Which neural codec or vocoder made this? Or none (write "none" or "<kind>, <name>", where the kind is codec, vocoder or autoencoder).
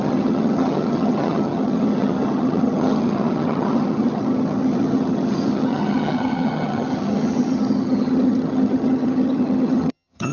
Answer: vocoder, HiFi-GAN